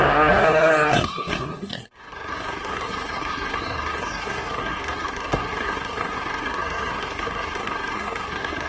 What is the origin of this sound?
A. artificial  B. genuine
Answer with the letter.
A